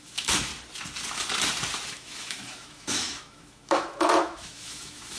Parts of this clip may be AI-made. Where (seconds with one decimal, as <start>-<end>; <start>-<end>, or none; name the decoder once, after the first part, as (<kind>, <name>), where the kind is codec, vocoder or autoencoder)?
0.0-0.5 (autoencoder, DAC-VAE); 1.9-5.2